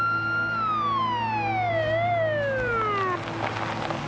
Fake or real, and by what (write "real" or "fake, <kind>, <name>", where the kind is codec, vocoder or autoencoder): real